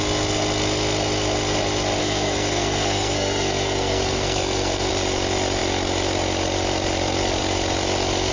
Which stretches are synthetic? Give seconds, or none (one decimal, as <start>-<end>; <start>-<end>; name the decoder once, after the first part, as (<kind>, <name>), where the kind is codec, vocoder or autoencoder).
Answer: 2.0-4.9 (codec, SNAC)